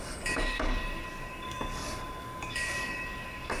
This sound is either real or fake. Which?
fake